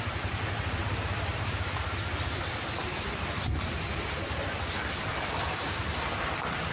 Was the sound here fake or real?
fake